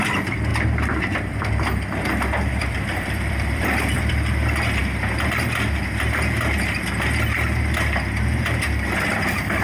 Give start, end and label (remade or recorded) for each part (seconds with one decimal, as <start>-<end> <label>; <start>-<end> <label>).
0.0-4.8 remade; 4.8-9.1 recorded; 9.1-9.6 remade